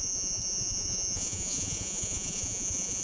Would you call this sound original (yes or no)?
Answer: no